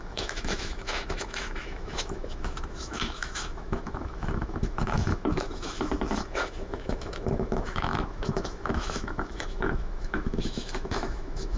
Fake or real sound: fake